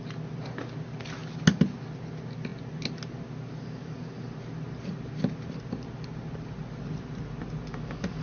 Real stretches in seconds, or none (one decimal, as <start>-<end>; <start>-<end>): 0.0-8.2